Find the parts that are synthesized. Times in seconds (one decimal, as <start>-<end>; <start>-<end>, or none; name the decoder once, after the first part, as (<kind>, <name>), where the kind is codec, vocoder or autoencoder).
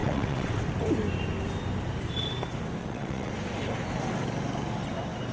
0.0-0.6 (vocoder, WaveNeXt); 2.8-3.3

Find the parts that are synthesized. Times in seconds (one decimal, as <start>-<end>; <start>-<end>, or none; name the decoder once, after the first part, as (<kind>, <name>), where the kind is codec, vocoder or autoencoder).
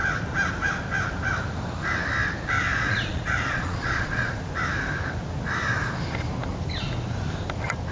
2.7-4.4 (vocoder, Vocos)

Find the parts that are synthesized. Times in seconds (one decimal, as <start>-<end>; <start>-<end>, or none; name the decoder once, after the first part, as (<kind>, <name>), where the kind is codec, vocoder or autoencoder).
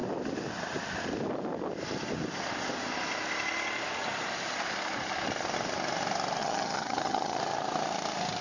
6.4-7.4 (vocoder, HiFi-GAN)